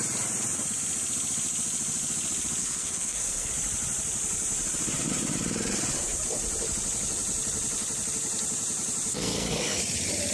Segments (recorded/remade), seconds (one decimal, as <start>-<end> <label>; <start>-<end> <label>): 0.0-2.6 recorded; 2.6-3.5 remade; 3.5-9.1 recorded; 9.1-9.8 remade; 9.8-10.3 recorded